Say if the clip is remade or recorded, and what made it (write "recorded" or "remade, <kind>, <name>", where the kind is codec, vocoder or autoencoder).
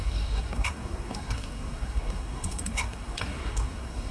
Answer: remade, codec, SNAC